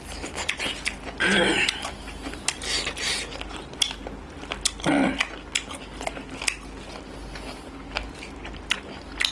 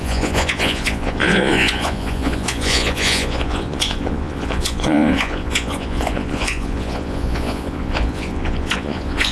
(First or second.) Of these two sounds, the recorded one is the first